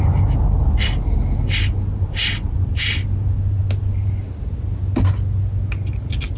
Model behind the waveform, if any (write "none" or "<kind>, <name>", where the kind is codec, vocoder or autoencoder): none